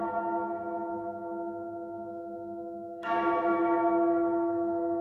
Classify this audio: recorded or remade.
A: remade